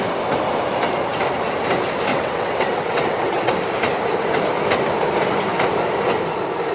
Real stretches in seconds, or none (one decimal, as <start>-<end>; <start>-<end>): 0.0-2.1; 3.5-6.7